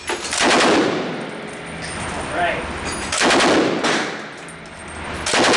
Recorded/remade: recorded